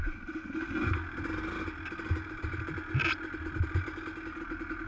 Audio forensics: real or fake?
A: real